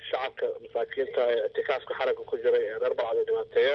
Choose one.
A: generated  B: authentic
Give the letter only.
B